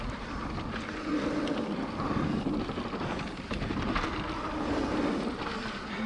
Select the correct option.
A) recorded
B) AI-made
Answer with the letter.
A